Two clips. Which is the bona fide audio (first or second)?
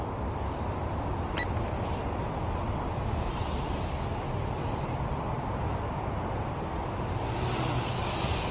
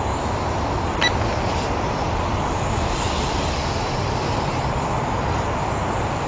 second